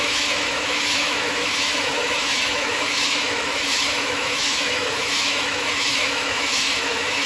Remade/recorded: remade